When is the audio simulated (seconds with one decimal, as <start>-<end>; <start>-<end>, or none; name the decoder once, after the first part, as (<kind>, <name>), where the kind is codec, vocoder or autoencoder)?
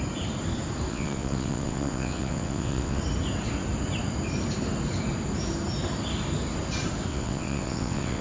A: 0.9-3.0 (vocoder, WaveNeXt); 7.1-8.2